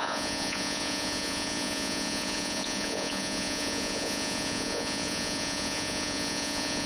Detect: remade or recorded remade